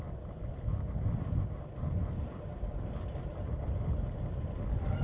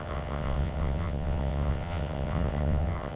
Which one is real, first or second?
first